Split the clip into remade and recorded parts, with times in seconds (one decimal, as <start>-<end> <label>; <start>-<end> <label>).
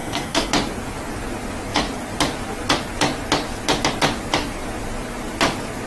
0.0-0.5 remade; 0.5-5.9 recorded